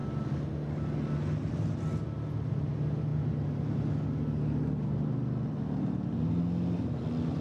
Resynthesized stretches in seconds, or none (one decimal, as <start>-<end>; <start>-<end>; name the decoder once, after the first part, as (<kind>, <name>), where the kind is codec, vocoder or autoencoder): none